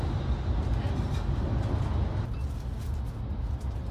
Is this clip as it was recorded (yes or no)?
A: yes